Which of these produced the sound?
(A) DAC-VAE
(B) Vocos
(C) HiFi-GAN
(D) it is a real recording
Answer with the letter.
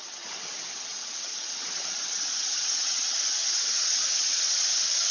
C